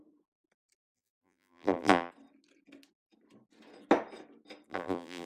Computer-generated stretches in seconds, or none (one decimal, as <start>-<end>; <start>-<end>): 0.9-2.1; 4.7-5.3